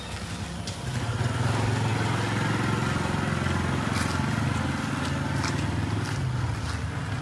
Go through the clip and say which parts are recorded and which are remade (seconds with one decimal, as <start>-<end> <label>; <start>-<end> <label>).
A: 0.0-7.2 recorded